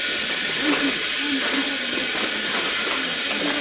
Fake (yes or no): no